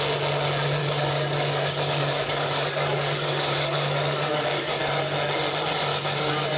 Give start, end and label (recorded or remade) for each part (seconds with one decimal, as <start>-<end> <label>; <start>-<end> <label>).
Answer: 0.0-0.8 recorded; 0.8-4.8 remade; 4.8-5.9 recorded; 5.9-6.6 remade